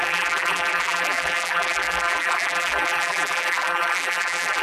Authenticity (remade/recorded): remade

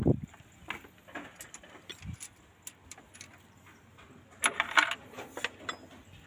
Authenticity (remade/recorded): recorded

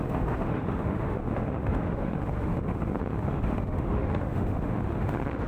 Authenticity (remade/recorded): remade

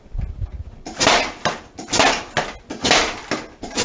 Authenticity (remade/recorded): recorded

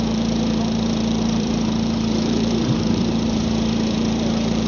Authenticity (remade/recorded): remade